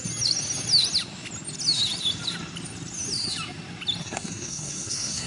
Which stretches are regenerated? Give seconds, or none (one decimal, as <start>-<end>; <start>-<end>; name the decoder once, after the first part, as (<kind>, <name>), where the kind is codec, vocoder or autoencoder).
4.0-5.3 (codec, SNAC)